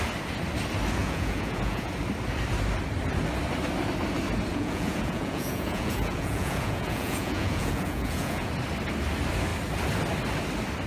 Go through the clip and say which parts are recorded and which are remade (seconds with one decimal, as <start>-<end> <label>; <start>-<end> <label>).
0.0-1.0 recorded; 1.0-1.9 remade; 1.9-4.5 recorded; 4.5-8.5 remade; 8.5-10.9 recorded